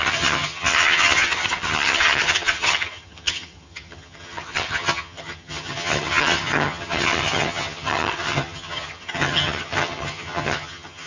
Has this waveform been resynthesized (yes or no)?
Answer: yes